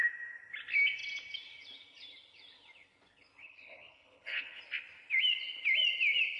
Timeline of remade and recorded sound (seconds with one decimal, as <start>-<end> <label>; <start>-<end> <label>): 0.0-3.4 recorded; 3.4-4.6 remade; 4.6-6.4 recorded